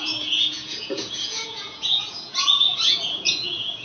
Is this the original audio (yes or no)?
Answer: no